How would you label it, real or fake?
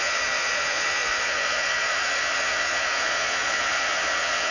fake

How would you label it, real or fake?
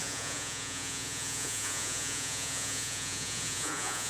fake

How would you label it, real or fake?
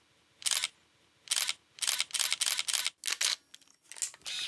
real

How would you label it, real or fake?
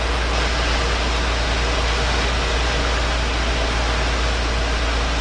real